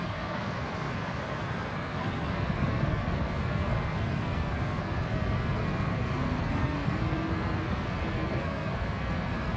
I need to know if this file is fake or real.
fake